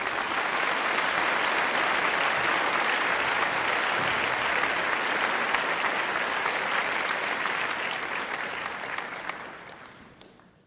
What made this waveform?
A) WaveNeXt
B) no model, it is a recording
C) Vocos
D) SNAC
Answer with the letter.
B